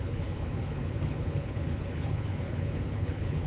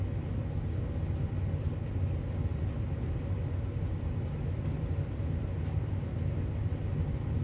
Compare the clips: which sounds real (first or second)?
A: second